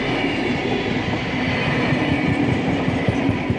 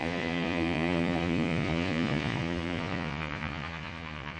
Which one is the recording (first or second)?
first